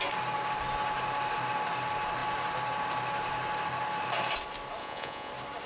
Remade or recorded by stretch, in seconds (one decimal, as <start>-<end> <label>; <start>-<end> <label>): 0.0-4.8 recorded; 4.8-5.3 remade; 5.3-5.7 recorded